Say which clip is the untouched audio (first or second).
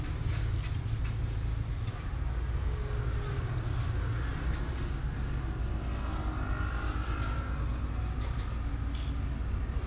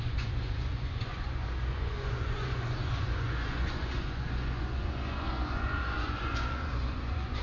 first